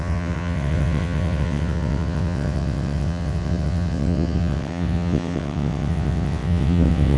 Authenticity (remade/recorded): remade